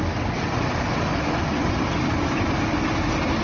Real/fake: real